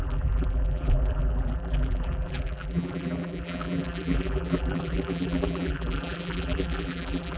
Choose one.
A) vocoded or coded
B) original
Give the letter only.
A